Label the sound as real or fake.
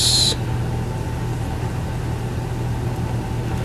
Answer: real